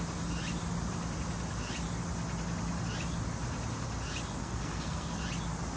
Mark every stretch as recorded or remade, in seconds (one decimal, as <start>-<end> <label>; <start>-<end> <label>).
0.0-4.4 recorded; 4.4-5.2 remade; 5.2-5.8 recorded